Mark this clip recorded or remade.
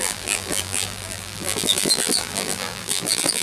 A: remade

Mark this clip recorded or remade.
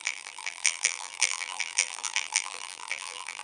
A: remade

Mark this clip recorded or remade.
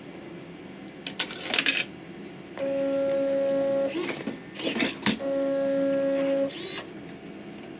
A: recorded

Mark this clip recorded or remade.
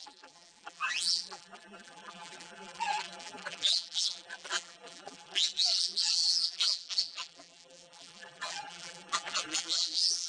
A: remade